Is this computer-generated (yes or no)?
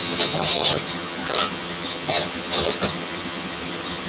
yes